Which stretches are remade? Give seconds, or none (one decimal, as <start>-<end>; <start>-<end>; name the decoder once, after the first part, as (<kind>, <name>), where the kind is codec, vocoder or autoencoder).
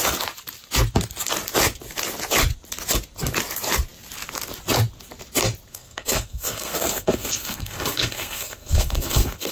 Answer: 5.7-9.5 (codec, SNAC)